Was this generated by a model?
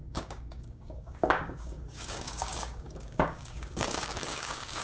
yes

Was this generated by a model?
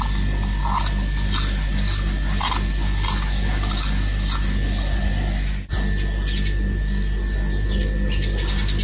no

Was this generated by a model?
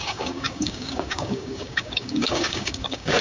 yes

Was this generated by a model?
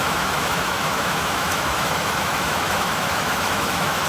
yes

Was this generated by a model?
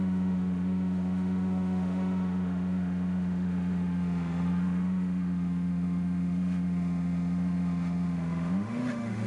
yes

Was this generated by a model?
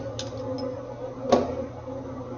no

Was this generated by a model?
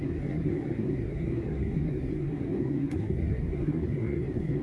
yes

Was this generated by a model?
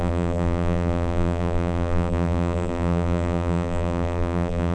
yes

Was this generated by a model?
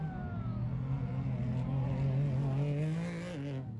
no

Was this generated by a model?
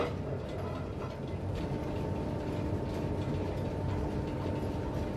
no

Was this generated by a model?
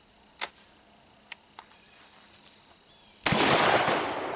no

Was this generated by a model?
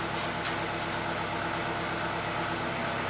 no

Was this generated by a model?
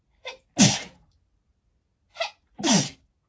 no